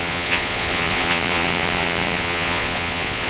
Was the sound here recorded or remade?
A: remade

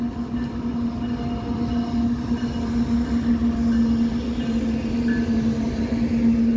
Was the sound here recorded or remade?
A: recorded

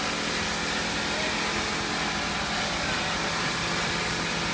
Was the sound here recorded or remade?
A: recorded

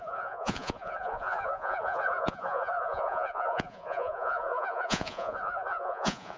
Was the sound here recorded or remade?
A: remade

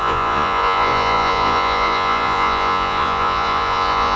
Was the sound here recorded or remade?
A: remade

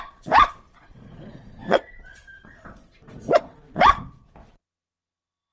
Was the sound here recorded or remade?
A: remade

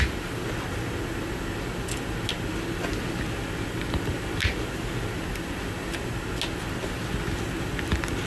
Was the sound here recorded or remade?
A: recorded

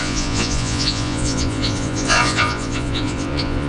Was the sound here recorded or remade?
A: remade